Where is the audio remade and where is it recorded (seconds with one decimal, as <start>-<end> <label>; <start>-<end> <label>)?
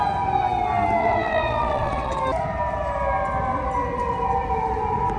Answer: 0.0-1.0 recorded; 1.0-2.2 remade; 2.2-5.2 recorded